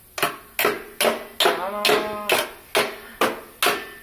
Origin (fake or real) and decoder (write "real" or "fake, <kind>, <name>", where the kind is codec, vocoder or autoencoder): real